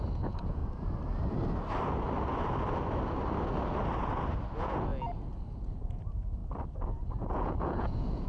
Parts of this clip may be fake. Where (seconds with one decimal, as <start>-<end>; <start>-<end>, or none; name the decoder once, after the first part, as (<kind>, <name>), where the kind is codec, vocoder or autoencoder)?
0.0-0.6 (vocoder, Vocos); 4.5-4.9; 5.5-6.4; 7.1-8.3